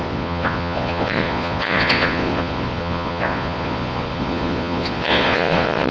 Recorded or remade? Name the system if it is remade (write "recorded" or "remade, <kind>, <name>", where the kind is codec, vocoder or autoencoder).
remade, vocoder, Vocos